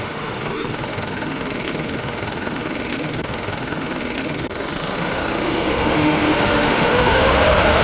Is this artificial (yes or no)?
yes